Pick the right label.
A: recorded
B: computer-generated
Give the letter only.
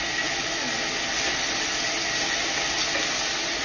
A